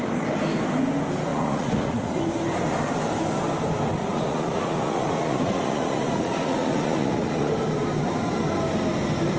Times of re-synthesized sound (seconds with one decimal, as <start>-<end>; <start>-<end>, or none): 1.3-2.2; 4.0-7.5

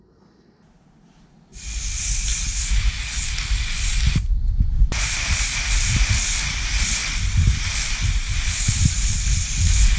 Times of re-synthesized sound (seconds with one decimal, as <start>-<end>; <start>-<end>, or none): none

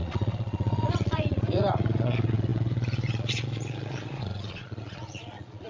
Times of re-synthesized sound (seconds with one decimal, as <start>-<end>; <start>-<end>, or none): 0.0-5.7

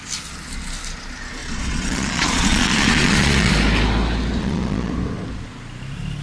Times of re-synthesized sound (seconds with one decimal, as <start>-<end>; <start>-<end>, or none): 1.4-3.5; 4.4-4.9

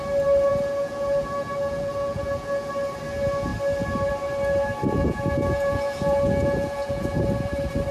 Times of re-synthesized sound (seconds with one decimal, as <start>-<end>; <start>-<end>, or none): 0.5-2.7; 5.0-7.2

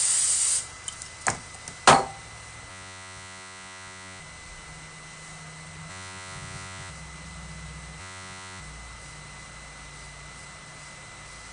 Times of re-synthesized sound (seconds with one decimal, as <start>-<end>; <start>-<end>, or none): 2.7-4.2; 5.9-6.9; 8.0-8.6

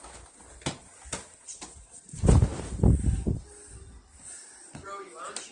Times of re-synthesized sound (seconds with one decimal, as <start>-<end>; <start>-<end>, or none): none